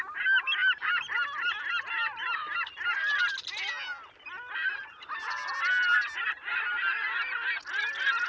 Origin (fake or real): real